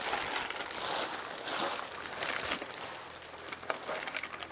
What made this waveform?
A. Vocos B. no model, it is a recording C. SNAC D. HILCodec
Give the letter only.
B